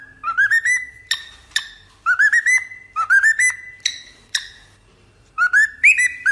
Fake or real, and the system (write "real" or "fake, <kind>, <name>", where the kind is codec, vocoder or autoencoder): real